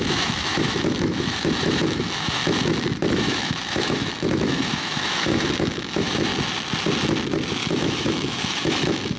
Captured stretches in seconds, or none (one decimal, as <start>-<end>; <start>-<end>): 2.4-3.1; 6.3-7.6